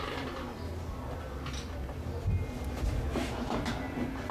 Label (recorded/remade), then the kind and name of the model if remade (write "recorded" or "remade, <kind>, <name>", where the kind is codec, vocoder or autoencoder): recorded